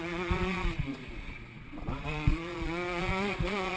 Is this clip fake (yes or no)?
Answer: yes